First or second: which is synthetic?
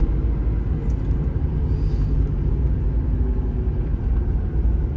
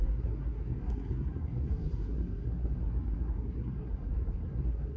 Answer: second